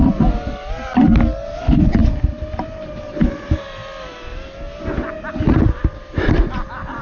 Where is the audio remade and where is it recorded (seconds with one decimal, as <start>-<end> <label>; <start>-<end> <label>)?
0.0-7.0 recorded